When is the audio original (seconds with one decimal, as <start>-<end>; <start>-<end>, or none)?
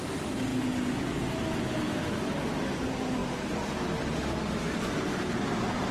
0.0-5.9